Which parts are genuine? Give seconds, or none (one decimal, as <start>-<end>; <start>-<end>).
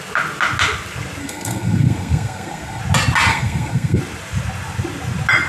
0.0-1.2; 2.8-3.3; 4.0-5.5